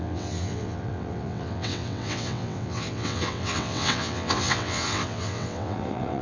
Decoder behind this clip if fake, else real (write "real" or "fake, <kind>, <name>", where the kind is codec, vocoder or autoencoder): fake, vocoder, WaveNeXt